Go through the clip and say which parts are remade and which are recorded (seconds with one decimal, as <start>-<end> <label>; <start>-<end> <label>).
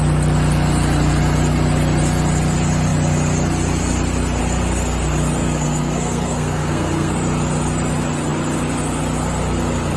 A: 0.0-5.4 recorded; 5.4-7.1 remade; 7.1-10.0 recorded